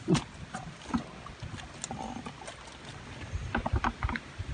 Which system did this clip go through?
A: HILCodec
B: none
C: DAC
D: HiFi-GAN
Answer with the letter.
B